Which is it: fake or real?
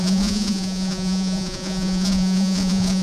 fake